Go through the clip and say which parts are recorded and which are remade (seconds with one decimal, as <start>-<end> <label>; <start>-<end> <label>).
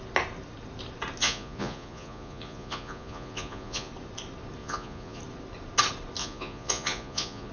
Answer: 0.0-1.2 recorded; 1.2-3.9 remade; 3.9-4.6 recorded; 4.6-5.2 remade; 5.2-6.2 recorded; 6.2-7.5 remade